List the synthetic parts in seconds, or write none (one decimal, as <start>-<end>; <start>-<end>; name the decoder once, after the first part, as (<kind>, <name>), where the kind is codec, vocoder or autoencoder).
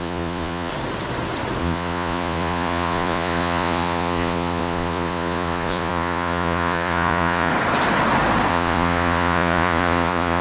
0.0-0.7 (vocoder, Vocos); 1.6-7.5; 8.5-10.4